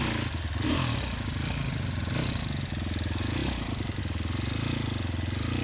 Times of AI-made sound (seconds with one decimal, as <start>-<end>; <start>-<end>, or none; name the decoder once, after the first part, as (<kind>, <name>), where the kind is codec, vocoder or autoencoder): none